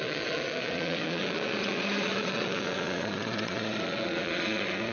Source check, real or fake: fake